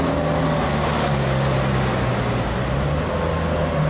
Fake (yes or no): no